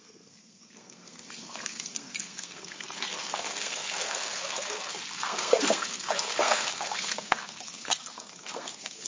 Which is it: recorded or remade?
remade